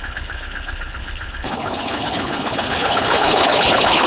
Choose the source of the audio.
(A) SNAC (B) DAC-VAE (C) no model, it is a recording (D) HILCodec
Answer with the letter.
D